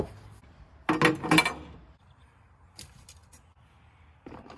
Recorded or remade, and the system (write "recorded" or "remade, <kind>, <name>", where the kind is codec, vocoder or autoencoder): recorded